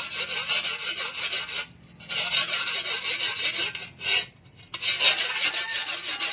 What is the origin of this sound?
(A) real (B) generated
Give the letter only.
A